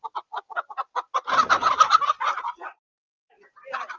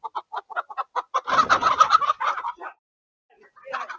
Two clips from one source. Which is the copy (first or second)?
second